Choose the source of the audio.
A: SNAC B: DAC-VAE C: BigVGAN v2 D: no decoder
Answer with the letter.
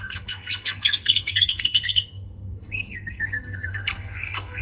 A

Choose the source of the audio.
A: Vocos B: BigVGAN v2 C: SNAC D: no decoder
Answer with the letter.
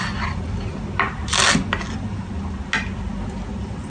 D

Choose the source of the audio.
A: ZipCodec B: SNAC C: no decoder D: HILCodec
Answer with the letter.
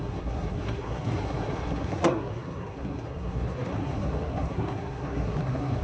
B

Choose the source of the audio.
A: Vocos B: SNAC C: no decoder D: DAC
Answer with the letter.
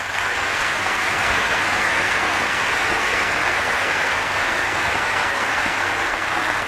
B